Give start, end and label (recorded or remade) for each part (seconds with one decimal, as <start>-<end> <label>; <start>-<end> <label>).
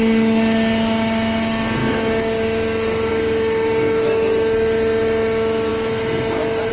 0.0-6.7 recorded